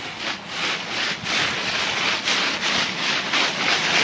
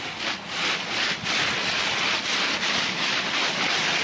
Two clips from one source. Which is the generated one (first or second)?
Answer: second